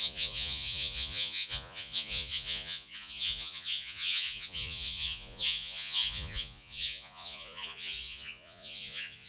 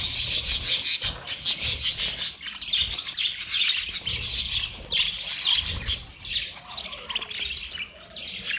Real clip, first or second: second